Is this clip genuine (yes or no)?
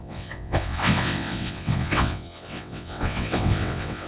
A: no